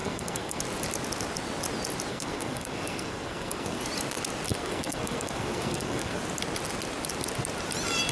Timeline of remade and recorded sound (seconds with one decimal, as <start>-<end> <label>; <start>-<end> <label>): 0.0-0.6 remade; 0.6-2.1 recorded; 2.1-3.8 remade; 3.8-4.5 recorded; 4.5-6.2 remade; 6.2-8.1 recorded